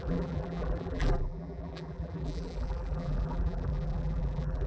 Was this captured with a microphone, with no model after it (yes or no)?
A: no